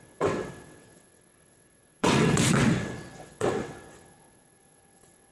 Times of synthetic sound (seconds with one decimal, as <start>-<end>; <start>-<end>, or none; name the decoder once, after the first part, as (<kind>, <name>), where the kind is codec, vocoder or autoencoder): 0.0-5.3 (vocoder, WaveNeXt)